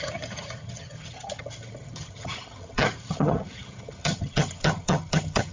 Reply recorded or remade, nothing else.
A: remade